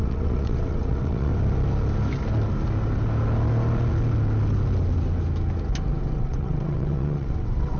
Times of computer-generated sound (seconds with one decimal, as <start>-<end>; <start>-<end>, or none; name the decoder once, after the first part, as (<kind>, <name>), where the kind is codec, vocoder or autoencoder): 0.0-1.3 (vocoder, WaveNeXt); 6.0-7.8